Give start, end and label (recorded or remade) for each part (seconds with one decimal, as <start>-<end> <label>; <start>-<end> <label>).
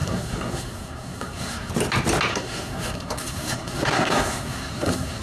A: 0.0-1.7 remade; 1.7-2.3 recorded; 2.3-5.2 remade